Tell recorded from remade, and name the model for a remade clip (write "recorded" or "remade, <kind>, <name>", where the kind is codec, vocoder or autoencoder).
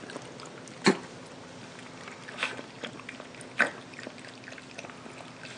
recorded